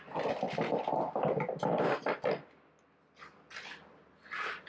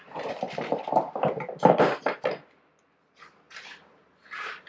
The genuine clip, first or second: first